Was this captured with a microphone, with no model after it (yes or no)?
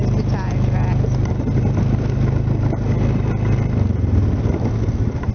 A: yes